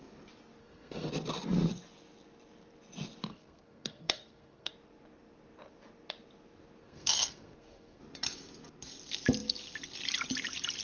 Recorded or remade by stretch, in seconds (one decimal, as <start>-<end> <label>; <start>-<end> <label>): 0.0-0.6 recorded; 0.6-1.1 remade; 1.1-3.3 recorded; 3.3-4.7 remade; 4.7-6.8 recorded; 6.8-8.0 remade; 8.0-10.8 recorded